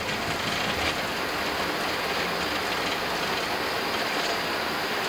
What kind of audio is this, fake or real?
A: real